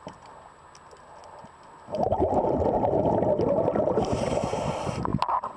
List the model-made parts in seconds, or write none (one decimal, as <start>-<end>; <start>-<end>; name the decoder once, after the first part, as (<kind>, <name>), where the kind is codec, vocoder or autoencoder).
none